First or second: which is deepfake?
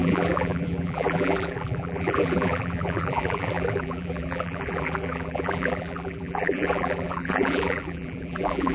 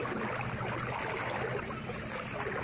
first